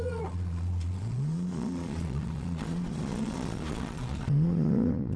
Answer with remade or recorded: remade